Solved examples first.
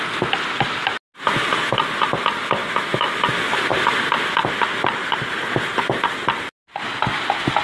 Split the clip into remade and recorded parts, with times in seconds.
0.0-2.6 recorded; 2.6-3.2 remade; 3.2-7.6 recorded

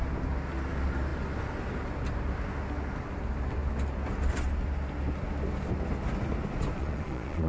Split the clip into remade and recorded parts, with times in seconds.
0.0-6.8 recorded; 6.8-7.5 remade

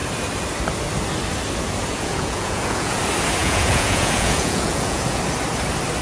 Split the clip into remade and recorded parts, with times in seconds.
0.0-1.9 recorded; 1.9-3.0 remade; 3.0-3.4 recorded; 3.4-5.2 remade; 5.2-6.0 recorded

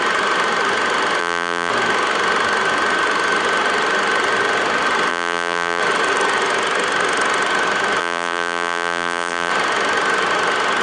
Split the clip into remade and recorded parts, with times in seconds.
0.0-1.2 recorded; 1.2-1.7 remade; 1.7-5.1 recorded; 5.1-5.8 remade; 5.8-8.0 recorded; 8.0-9.5 remade; 9.5-10.8 recorded

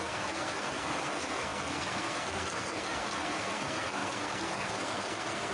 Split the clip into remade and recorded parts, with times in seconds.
0.0-5.5 remade

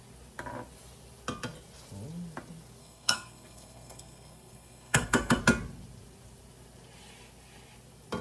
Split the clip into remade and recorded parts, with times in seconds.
0.0-2.8 recorded; 2.8-5.4 remade; 5.4-8.2 recorded

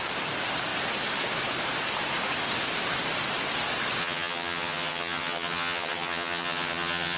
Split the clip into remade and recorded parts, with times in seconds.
0.0-4.0 recorded; 4.0-7.2 remade